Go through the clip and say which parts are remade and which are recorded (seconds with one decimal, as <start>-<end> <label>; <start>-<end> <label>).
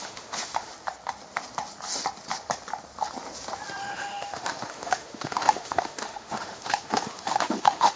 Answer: 0.0-0.7 remade; 0.7-3.8 recorded; 3.8-8.0 remade